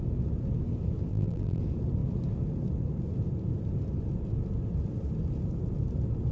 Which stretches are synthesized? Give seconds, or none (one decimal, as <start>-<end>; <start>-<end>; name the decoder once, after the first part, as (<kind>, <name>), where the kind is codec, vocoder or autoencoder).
1.1-1.6 (vocoder, BigVGAN v2)